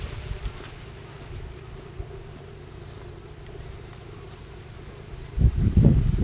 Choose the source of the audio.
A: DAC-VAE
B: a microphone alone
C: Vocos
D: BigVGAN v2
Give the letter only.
D